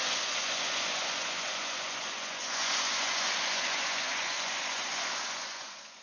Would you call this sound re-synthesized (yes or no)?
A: yes